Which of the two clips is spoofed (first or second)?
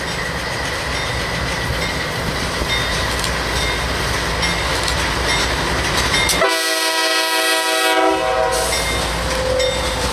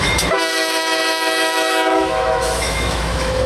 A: second